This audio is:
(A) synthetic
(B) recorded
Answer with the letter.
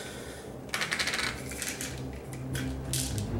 B